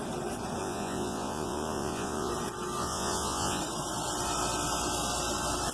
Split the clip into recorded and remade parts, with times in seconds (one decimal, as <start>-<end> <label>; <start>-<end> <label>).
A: 0.0-0.6 recorded; 0.6-2.3 remade; 2.3-2.8 recorded; 2.8-3.6 remade; 3.6-5.7 recorded